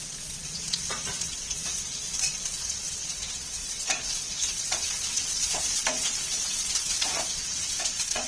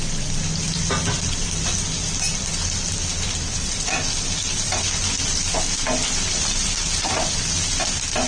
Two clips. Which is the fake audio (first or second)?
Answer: first